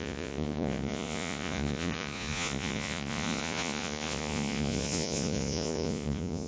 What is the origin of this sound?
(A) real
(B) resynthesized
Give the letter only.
B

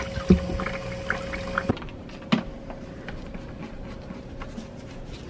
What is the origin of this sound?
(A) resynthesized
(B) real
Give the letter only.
B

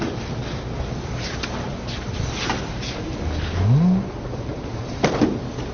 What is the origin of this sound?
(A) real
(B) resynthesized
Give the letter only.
A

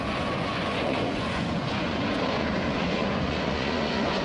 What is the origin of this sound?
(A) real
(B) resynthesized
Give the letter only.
B